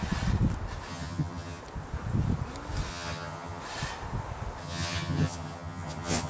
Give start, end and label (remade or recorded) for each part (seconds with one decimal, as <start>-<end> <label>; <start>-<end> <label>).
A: 0.0-0.9 recorded; 0.9-1.6 remade; 1.6-2.9 recorded; 2.9-3.6 remade; 3.6-4.6 recorded; 4.6-6.3 remade